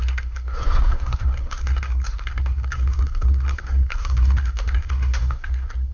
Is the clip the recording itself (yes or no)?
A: no